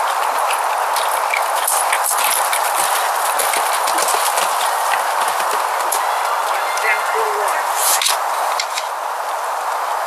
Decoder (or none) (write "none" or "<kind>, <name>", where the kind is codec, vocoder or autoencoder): none